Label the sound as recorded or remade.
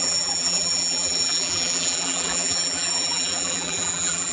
remade